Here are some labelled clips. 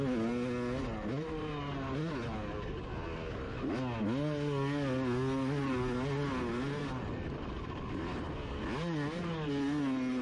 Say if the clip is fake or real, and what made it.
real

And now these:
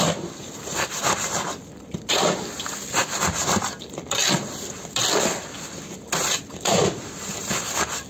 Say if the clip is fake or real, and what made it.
real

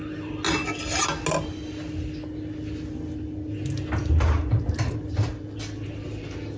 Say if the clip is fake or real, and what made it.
real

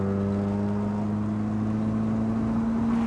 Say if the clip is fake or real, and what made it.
real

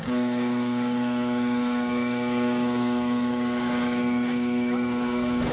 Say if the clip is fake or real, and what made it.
fake, codec, DAC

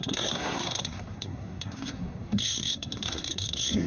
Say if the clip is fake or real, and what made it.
fake, codec, SNAC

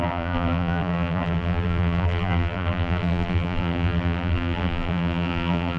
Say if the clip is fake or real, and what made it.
fake, vocoder, BigVGAN v2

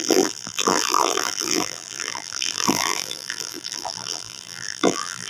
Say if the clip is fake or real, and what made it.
fake, vocoder, BigVGAN v2